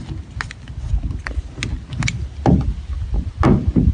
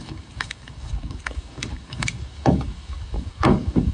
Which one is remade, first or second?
second